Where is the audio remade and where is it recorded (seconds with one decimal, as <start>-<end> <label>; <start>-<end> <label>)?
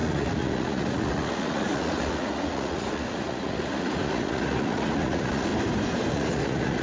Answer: 0.0-5.5 remade; 5.5-6.1 recorded; 6.1-6.8 remade